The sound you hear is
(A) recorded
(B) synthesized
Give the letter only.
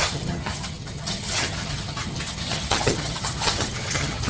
B